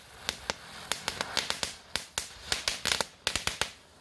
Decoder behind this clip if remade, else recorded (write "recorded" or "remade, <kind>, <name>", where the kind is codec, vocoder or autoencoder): recorded